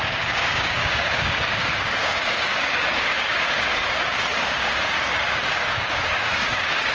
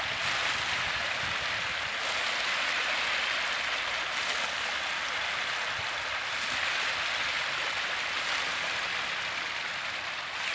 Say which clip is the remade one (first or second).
first